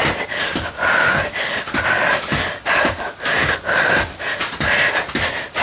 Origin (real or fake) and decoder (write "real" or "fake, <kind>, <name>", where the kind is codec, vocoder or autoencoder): real